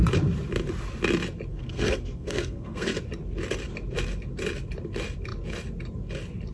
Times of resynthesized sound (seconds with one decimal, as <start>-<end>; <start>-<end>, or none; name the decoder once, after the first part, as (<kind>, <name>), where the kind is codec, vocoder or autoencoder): 1.5-3.0 (codec, SNAC)